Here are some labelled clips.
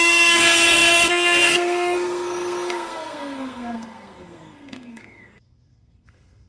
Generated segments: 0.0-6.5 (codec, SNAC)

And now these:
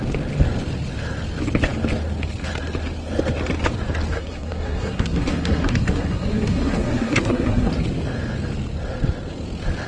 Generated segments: 4.1-7.7 (codec, SNAC)

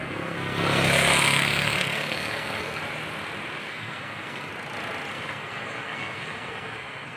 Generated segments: 0.0-2.8 (codec, SNAC); 3.6-4.5; 5.1-7.2

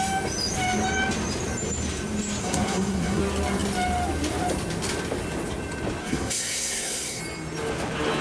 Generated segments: 2.4-3.2 (codec, SNAC); 6.0-7.2

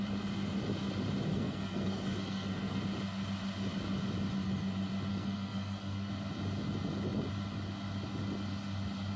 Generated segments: 1.3-2.8 (codec, SNAC); 5.1-6.1

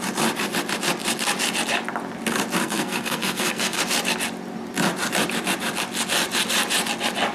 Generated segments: 2.6-3.8 (codec, SNAC)

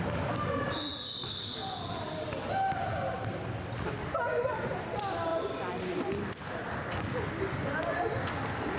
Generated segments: none

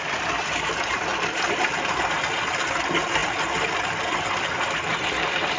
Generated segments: none